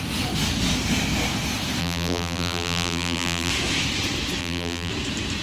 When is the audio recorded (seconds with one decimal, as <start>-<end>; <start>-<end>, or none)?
0.0-1.8; 3.5-4.4; 4.9-5.4